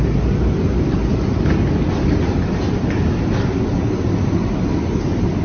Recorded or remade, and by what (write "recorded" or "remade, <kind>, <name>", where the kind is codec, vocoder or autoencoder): recorded